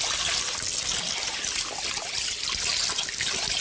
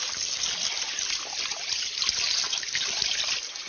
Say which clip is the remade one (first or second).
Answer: second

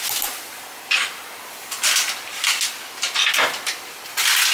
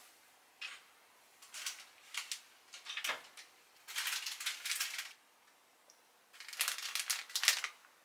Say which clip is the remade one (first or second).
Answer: first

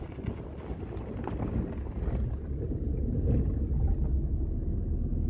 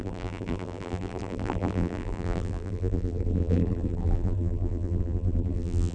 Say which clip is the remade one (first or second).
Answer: second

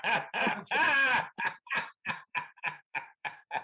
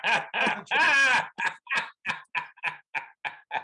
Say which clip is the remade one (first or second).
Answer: first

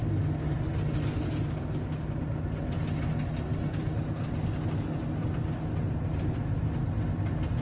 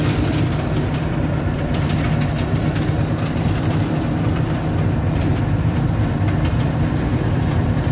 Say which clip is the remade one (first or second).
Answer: second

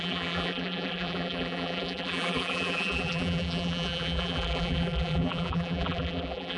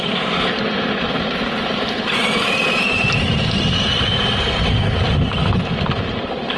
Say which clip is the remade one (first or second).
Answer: first